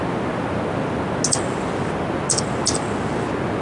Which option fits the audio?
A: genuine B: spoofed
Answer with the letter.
A